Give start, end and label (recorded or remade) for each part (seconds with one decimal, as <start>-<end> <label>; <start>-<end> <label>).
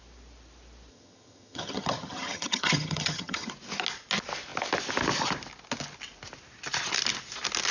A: 0.0-0.9 recorded; 0.9-3.5 remade; 3.5-7.7 recorded